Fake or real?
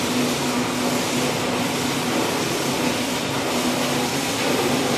real